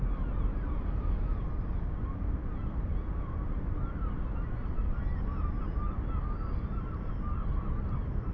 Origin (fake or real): real